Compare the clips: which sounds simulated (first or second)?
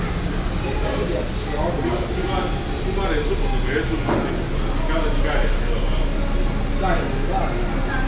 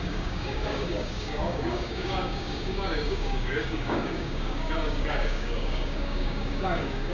second